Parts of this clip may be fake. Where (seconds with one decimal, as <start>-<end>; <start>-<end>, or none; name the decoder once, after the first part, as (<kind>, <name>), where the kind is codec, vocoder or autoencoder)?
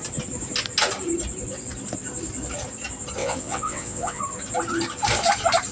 3.2-4.2 (vocoder, WaveNeXt)